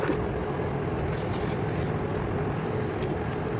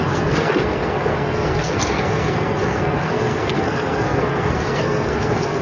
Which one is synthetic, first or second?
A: second